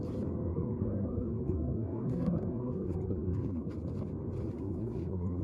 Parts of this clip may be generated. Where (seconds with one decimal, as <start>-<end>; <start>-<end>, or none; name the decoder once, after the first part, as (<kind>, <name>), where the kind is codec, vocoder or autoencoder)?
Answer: 0.5-3.7 (codec, SNAC); 4.5-5.4